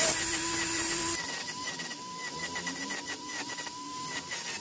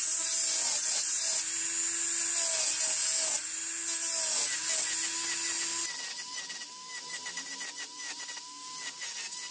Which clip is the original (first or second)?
second